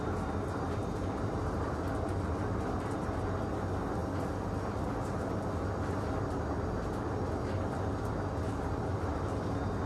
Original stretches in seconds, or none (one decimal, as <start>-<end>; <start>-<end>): 0.0-9.9